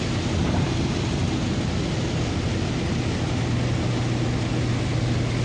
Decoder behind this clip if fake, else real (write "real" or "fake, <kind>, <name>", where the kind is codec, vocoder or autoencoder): real